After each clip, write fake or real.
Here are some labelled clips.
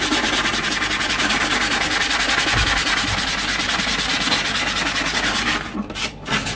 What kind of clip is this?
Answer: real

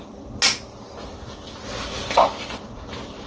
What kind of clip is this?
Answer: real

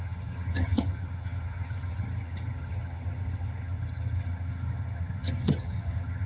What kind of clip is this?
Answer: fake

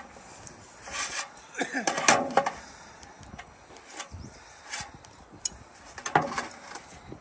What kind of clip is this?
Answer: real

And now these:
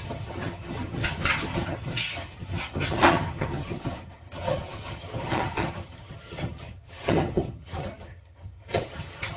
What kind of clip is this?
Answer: fake